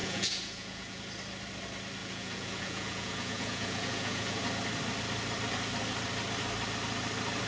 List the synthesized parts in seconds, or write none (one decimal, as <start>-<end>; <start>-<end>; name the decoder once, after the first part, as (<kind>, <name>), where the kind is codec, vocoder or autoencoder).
0.0-1.0 (vocoder, Vocos); 2.0-4.4